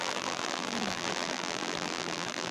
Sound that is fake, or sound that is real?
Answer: fake